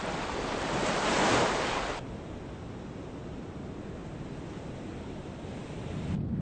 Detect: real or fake real